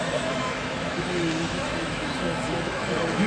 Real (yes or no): no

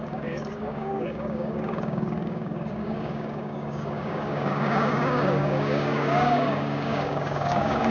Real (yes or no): no